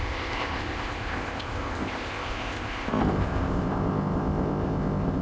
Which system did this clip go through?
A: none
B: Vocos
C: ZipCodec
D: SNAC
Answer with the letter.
C